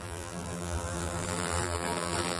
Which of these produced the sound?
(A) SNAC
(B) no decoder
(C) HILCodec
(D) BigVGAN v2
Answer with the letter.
D